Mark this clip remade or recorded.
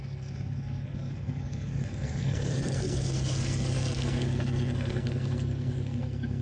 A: remade